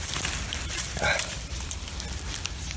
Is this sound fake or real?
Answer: fake